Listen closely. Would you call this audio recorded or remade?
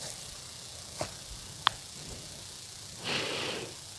recorded